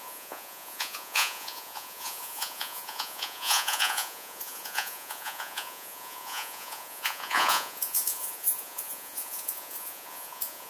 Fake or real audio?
fake